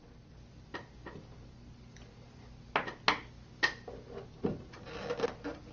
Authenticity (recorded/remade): recorded